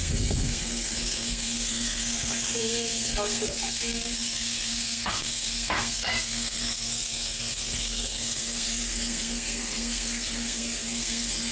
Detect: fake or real fake